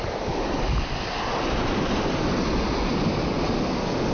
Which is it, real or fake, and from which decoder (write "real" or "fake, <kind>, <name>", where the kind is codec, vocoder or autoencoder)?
real